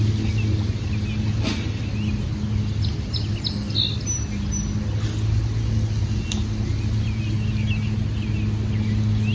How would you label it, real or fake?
real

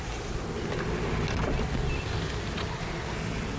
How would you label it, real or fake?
real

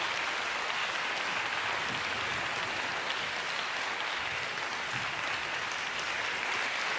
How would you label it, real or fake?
real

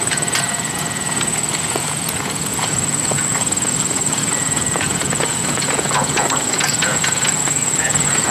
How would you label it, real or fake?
fake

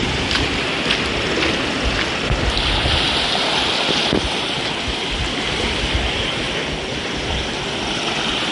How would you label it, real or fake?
real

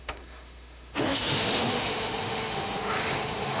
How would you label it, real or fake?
fake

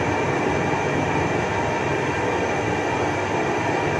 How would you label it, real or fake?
real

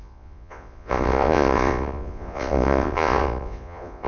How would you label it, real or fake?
fake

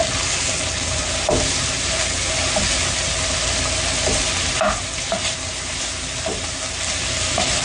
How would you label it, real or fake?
real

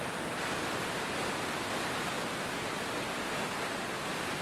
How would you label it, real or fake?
real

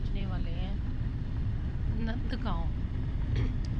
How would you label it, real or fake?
fake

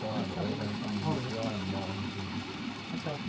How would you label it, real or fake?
fake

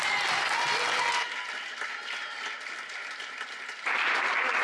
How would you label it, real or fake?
real